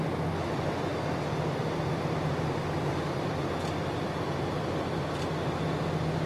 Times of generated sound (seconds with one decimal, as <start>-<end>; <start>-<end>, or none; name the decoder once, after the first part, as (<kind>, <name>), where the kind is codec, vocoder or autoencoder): none